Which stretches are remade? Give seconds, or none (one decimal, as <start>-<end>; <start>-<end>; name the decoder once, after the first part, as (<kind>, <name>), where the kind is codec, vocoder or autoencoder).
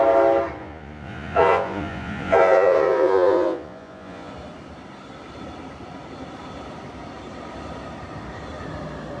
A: 0.6-4.3 (vocoder, Vocos)